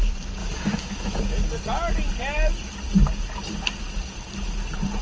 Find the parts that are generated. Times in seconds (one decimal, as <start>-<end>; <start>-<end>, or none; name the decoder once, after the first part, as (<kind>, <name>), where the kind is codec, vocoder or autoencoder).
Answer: 0.4-1.2 (autoencoder, DAC-VAE)